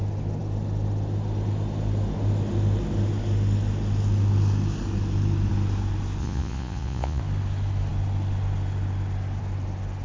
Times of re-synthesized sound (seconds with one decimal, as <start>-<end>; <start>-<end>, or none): 6.2-7.2